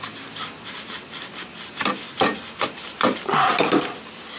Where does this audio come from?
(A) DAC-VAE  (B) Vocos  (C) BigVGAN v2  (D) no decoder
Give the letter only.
D